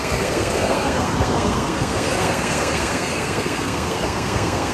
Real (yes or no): no